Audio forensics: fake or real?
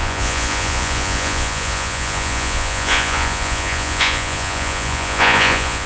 fake